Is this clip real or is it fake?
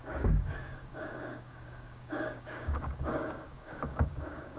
fake